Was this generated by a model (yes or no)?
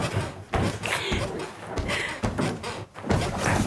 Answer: no